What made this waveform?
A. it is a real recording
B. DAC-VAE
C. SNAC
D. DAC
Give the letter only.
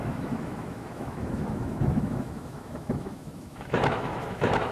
B